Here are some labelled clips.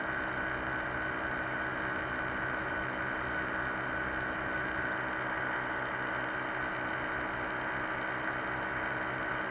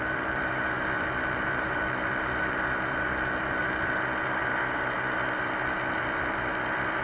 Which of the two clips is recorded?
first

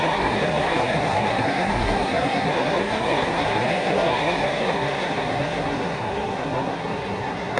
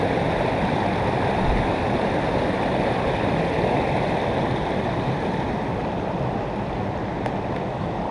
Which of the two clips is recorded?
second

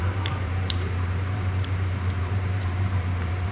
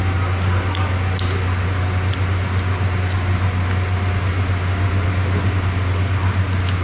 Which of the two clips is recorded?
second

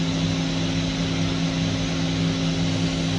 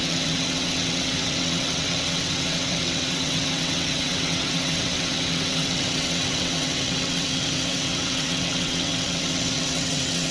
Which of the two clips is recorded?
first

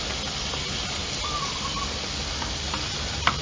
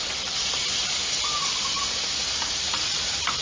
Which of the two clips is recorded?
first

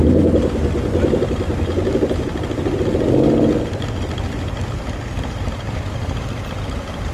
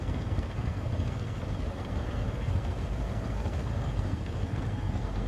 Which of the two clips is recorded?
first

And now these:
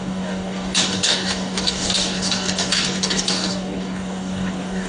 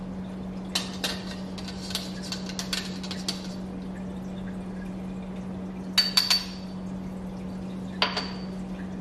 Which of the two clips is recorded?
second